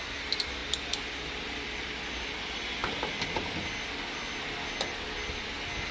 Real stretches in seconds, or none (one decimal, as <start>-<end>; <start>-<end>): 0.0-5.9